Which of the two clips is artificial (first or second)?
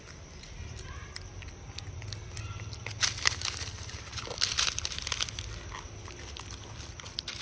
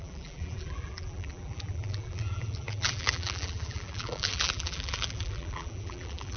second